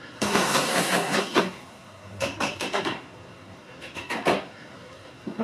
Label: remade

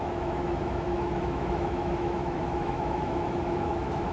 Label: remade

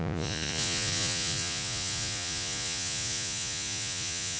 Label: remade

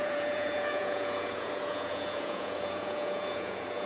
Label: remade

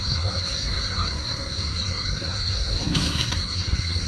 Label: remade